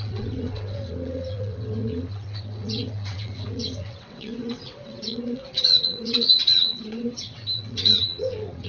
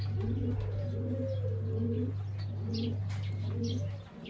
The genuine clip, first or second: second